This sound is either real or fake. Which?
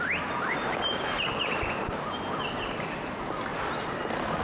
real